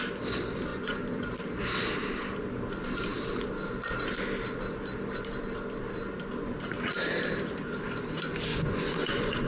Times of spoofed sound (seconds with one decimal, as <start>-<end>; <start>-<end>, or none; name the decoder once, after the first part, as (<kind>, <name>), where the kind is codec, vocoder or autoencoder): 0.7-1.3 (vocoder, Vocos); 8.5-9.5